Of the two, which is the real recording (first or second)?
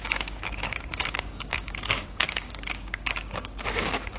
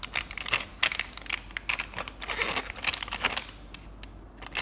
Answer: second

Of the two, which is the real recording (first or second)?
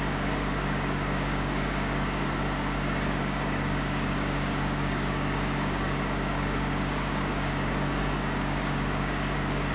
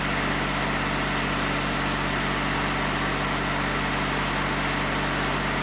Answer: second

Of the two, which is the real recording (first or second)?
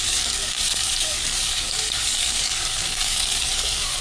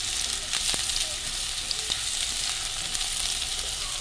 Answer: second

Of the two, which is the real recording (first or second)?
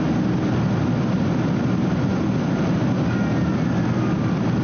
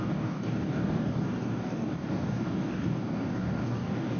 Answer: first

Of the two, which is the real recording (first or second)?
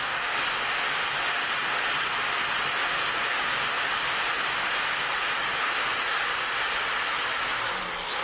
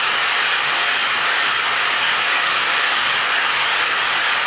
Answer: first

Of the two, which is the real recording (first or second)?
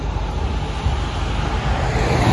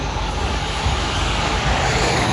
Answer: first